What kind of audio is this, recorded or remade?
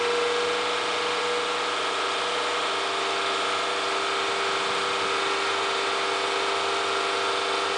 recorded